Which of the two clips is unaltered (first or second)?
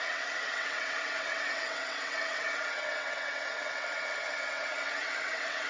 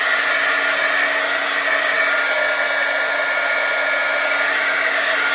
second